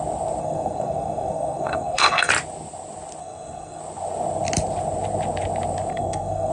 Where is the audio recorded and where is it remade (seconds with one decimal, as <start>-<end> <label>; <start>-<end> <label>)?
0.0-0.4 recorded; 0.4-2.3 remade; 2.3-3.2 recorded; 3.2-3.8 remade; 3.8-5.9 recorded; 5.9-6.5 remade